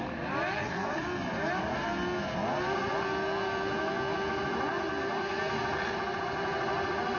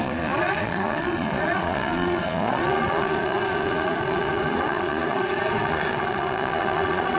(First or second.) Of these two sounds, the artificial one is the second